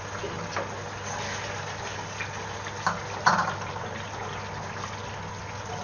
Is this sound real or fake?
real